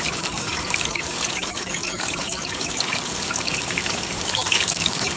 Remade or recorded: remade